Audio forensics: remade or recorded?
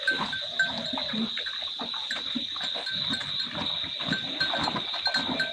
recorded